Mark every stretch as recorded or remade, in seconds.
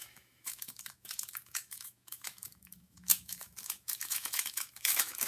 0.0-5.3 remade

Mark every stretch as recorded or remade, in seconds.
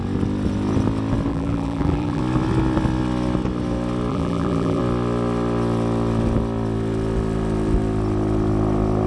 0.0-1.3 recorded; 1.3-2.2 remade; 2.2-4.1 recorded; 4.1-4.8 remade; 4.8-9.1 recorded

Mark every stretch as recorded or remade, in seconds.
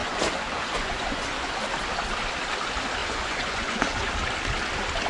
0.0-1.5 remade; 1.5-3.0 recorded; 3.0-4.1 remade; 4.1-5.1 recorded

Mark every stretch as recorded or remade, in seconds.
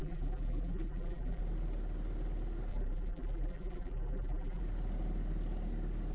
0.0-1.4 remade; 1.4-2.7 recorded; 2.7-4.6 remade; 4.6-6.1 recorded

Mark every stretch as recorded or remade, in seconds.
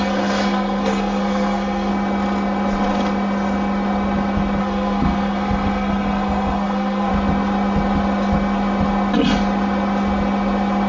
0.0-1.9 remade; 1.9-4.6 recorded; 4.6-7.1 remade; 7.1-10.9 recorded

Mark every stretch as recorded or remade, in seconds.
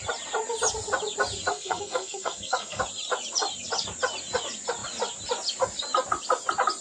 0.0-1.5 recorded; 1.5-2.8 remade; 2.8-6.8 recorded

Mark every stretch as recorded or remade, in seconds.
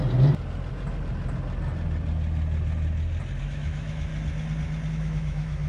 0.0-3.4 recorded; 3.4-4.1 remade; 4.1-4.9 recorded; 4.9-5.7 remade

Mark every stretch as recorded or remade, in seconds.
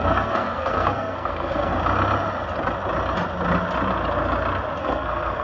0.0-1.7 remade; 1.7-4.8 recorded; 4.8-5.4 remade